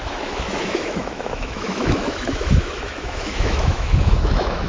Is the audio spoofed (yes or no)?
yes